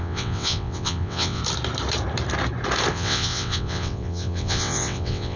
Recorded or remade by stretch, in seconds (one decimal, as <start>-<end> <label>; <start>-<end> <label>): 0.0-1.4 remade; 1.4-2.9 recorded; 2.9-5.4 remade